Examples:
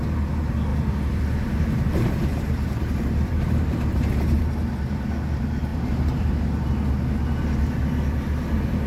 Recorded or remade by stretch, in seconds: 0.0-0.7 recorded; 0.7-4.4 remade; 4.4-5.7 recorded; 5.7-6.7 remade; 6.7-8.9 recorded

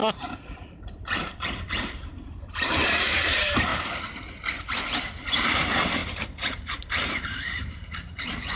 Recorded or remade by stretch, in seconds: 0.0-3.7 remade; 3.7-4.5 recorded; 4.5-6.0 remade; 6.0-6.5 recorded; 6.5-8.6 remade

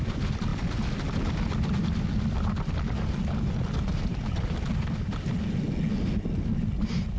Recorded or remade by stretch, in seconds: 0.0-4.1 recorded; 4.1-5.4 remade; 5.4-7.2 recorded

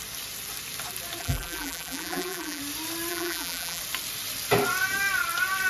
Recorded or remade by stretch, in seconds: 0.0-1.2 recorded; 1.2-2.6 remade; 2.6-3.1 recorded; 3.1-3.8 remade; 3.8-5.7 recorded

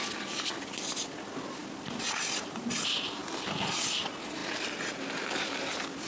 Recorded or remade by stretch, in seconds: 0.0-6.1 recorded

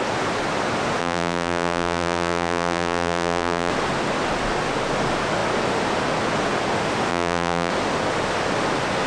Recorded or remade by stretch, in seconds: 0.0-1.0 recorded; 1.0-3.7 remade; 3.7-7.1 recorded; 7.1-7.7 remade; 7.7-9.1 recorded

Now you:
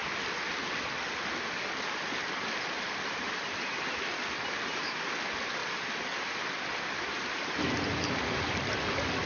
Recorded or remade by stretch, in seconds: 0.0-9.3 recorded